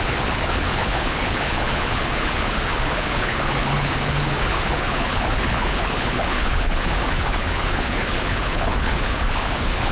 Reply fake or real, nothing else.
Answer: fake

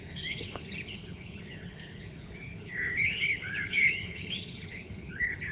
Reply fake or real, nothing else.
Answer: fake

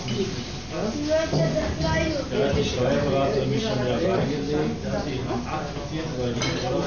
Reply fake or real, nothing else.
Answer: real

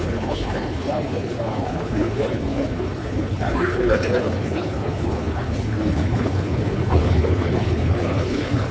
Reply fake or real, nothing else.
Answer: fake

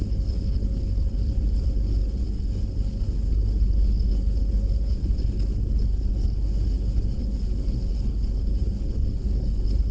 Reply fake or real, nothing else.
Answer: fake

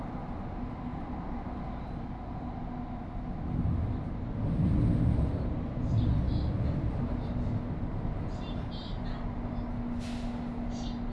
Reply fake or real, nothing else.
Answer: real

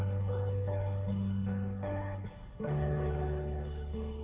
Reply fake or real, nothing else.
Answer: fake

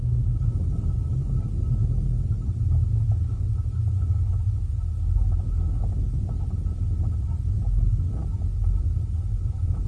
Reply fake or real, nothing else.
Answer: real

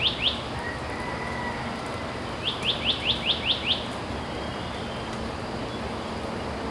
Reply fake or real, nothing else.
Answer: real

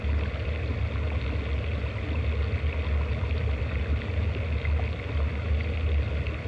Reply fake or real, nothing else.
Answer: real